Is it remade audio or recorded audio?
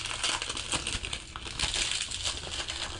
recorded